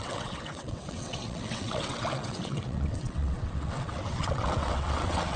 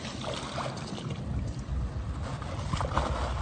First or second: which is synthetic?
first